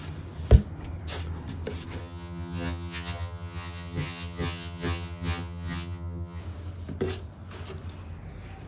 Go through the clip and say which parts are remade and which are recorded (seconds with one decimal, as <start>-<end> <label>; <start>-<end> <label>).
0.0-2.0 recorded; 2.0-6.4 remade; 6.4-8.7 recorded

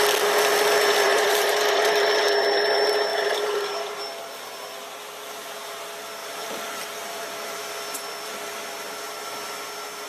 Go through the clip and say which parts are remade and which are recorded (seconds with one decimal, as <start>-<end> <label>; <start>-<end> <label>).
0.0-1.1 recorded; 1.1-1.9 remade; 1.9-3.1 recorded; 3.1-4.0 remade; 4.0-6.2 recorded; 6.2-7.7 remade; 7.7-10.1 recorded

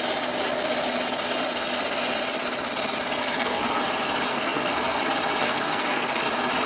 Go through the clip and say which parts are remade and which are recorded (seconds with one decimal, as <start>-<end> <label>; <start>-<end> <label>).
0.0-3.2 recorded; 3.2-3.8 remade; 3.8-4.3 recorded; 4.3-5.0 remade; 5.0-5.4 recorded; 5.4-6.2 remade; 6.2-6.7 recorded

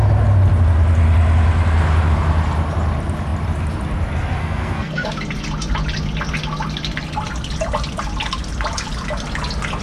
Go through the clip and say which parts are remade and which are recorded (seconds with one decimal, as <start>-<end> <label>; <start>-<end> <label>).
0.0-4.4 recorded; 4.4-5.1 remade; 5.1-9.8 recorded

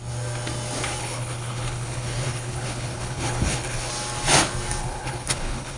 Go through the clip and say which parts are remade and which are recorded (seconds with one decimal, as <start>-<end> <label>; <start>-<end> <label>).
0.0-1.0 recorded; 1.0-3.9 remade; 3.9-4.8 recorded; 4.8-5.8 remade

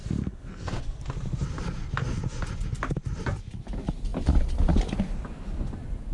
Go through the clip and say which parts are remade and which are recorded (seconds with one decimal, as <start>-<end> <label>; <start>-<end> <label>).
0.0-1.0 remade; 1.0-6.1 recorded

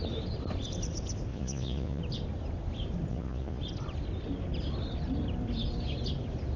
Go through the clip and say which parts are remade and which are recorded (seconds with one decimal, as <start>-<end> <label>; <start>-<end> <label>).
0.0-1.3 recorded; 1.3-2.0 remade; 2.0-3.1 recorded; 3.1-3.6 remade; 3.6-6.6 recorded